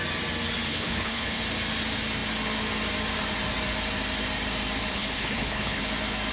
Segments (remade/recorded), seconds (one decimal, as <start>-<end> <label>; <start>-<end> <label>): 0.0-0.7 recorded; 0.7-1.4 remade; 1.4-4.9 recorded; 4.9-5.8 remade; 5.8-6.3 recorded